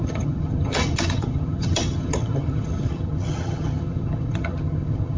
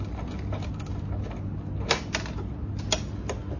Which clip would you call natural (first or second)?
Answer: second